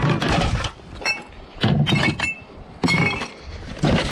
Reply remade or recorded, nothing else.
remade